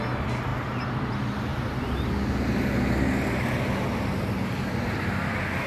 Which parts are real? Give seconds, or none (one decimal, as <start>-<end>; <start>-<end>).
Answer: 0.0-5.7